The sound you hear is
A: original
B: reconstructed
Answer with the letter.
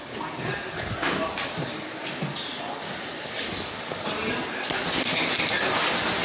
A